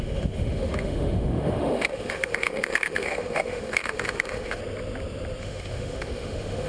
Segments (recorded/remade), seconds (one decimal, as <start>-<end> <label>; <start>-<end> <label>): 0.0-4.6 remade; 4.6-5.4 recorded; 5.4-6.7 remade